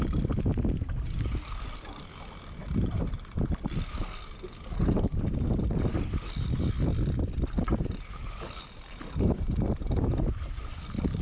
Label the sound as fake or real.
real